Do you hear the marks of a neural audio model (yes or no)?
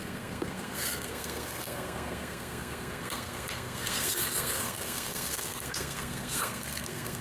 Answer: yes